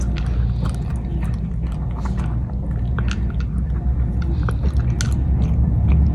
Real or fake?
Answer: real